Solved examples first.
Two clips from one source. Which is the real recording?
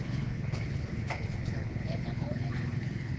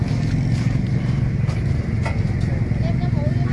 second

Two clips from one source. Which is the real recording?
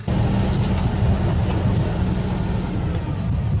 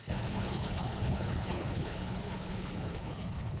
first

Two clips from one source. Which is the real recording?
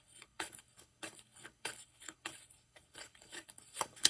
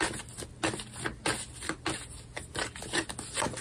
second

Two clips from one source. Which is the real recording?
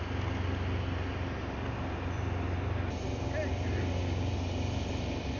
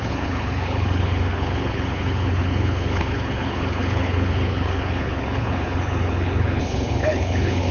first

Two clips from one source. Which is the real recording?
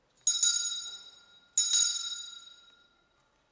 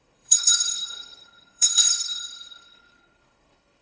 first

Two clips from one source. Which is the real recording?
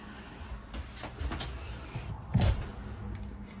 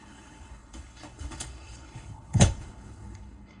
first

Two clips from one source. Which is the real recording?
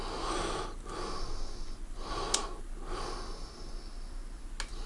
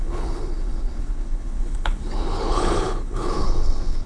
first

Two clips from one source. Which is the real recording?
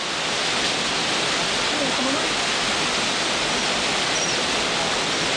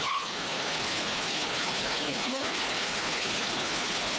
first